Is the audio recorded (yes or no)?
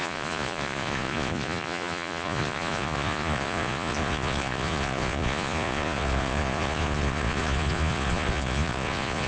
no